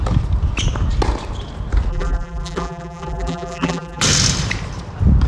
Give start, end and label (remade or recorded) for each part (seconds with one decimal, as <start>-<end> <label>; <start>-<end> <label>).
0.0-1.9 recorded; 1.9-4.0 remade; 4.0-5.3 recorded